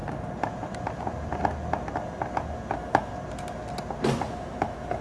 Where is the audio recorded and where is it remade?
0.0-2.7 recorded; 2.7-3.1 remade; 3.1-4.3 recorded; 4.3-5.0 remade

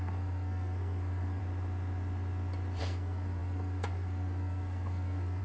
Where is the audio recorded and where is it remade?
0.0-1.4 remade; 1.4-2.8 recorded; 2.8-5.4 remade

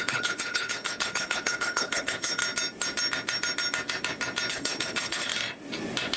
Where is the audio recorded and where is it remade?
0.0-2.4 remade; 2.4-4.5 recorded; 4.5-5.3 remade; 5.3-6.2 recorded